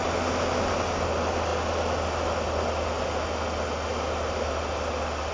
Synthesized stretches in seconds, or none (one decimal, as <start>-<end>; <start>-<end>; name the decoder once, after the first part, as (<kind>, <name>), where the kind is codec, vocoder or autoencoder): none